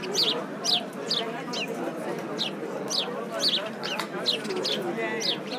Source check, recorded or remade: recorded